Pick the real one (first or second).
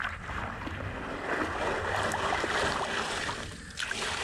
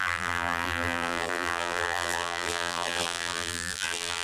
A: first